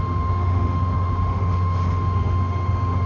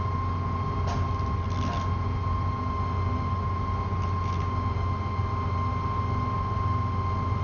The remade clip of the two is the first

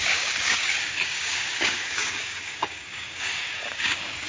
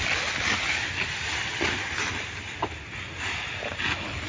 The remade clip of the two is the first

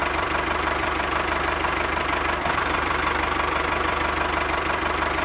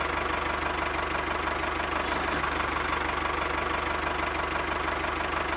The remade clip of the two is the first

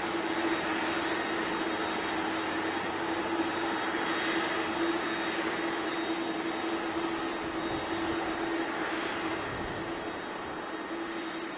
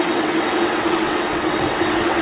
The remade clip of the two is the second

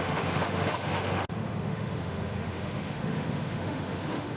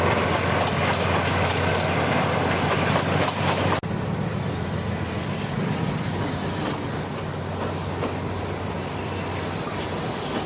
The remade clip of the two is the first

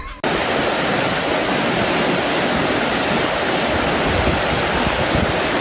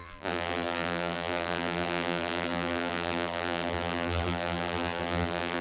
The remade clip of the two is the second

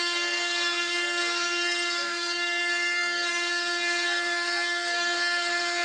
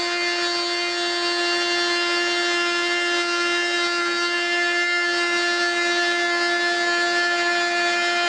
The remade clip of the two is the first